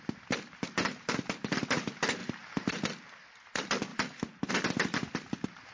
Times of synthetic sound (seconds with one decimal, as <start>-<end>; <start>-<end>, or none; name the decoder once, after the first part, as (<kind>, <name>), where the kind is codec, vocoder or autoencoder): none